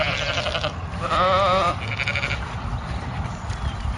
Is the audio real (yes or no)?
yes